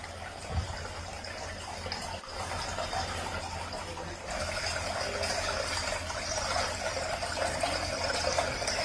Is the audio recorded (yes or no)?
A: yes